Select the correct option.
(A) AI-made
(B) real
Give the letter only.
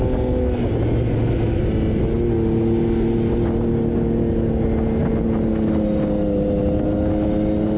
B